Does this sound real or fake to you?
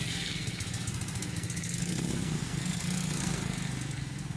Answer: fake